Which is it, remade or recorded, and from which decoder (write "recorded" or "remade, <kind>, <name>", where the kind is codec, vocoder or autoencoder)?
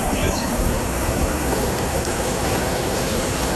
remade, codec, SNAC